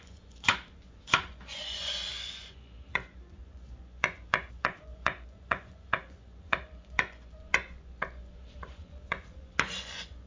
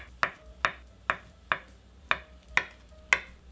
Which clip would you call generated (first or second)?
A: first